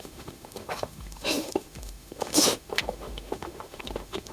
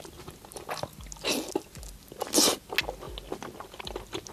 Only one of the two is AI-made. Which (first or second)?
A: first